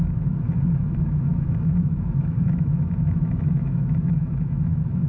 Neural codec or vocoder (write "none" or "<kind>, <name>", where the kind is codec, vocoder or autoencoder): autoencoder, DAC-VAE